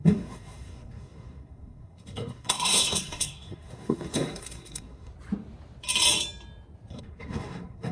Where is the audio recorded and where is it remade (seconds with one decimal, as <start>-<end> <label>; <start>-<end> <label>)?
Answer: 0.0-5.1 remade; 5.1-6.9 recorded; 6.9-7.9 remade